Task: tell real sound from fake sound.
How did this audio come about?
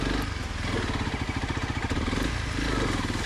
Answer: real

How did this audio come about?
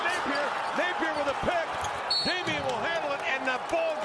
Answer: real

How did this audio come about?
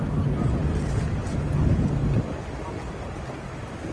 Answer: real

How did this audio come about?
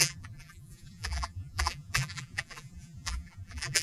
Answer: fake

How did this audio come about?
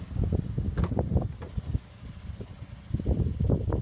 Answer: real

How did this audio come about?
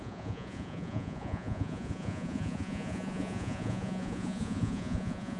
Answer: fake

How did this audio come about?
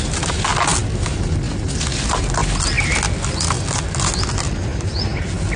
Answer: real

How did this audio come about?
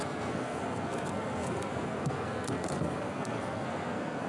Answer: fake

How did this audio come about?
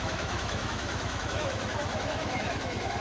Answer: fake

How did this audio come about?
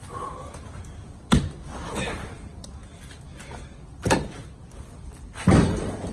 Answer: real